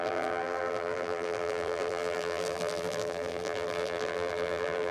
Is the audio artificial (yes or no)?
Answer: yes